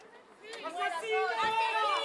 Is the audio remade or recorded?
recorded